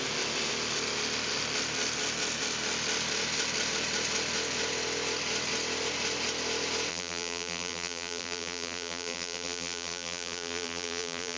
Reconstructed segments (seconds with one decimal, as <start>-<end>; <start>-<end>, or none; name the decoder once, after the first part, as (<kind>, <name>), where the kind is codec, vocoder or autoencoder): 6.9-11.4 (vocoder, BigVGAN v2)